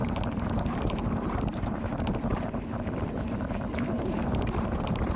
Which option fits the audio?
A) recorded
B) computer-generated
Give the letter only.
B